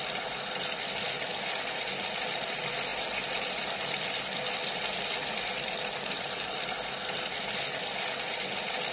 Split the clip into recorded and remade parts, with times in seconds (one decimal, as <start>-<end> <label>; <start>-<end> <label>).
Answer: 0.0-8.9 recorded

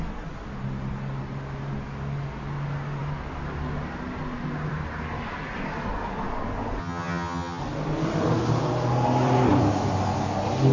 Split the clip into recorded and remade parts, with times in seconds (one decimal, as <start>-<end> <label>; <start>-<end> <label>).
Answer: 0.0-6.8 recorded; 6.8-7.6 remade; 7.6-10.7 recorded

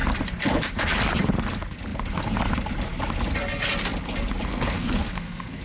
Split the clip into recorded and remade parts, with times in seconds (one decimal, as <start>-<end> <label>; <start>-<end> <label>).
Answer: 0.0-4.5 recorded; 4.5-5.6 remade